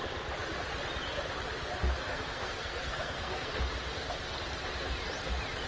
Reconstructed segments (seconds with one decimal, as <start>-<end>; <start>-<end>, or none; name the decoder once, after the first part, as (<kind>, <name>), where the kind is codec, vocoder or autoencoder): 2.1-3.6 (codec, SNAC)